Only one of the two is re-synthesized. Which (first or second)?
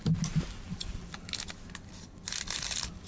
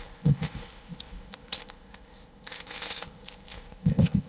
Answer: second